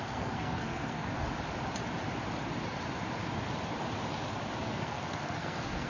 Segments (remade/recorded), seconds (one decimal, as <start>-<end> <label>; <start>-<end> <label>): 0.0-1.1 remade; 1.1-4.6 recorded; 4.6-5.9 remade